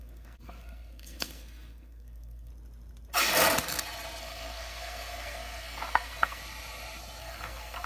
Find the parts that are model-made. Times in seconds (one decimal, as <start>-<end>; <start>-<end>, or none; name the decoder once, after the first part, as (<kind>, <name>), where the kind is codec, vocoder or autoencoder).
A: 0.0-2.5 (codec, SNAC); 4.2-6.4; 7.2-7.9